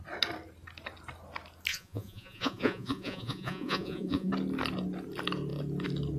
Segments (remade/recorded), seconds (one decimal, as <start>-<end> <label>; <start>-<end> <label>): 0.0-1.7 recorded; 1.7-4.3 remade; 4.3-6.2 recorded